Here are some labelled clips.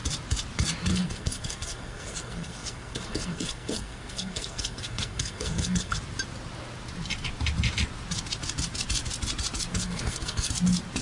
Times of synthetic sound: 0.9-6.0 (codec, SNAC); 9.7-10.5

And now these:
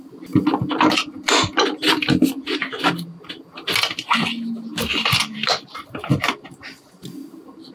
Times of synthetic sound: 4.9-6.8 (vocoder, BigVGAN v2)

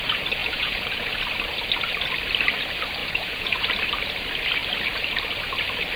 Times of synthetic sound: 0.4-1.2 (vocoder, Vocos); 3.0-3.6

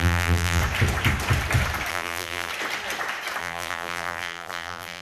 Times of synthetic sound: 0.0-0.6 (vocoder, BigVGAN v2); 1.9-2.5; 3.4-5.0

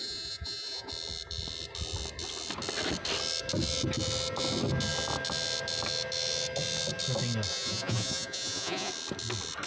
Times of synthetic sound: 0.0-0.9 (vocoder, Vocos); 7.5-8.9

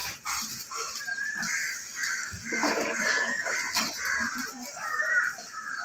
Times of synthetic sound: 1.6-3.6 (codec, DAC); 4.5-5.1

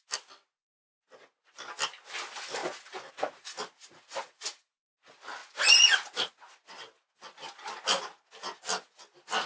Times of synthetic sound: none

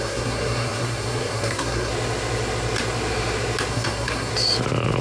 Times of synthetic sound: 0.0-1.9 (codec, SNAC); 3.7-4.3